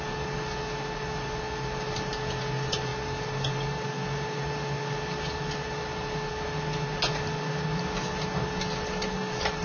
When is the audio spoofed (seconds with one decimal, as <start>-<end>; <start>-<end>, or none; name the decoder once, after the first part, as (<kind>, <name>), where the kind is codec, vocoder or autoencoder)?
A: none